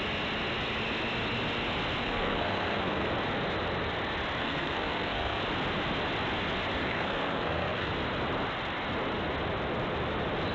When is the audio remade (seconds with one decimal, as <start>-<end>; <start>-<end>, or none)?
2.0-3.1; 4.4-5.4; 6.8-7.9